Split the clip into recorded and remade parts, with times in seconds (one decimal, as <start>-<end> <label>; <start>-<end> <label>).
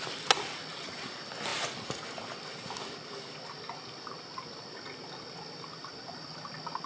0.0-6.9 recorded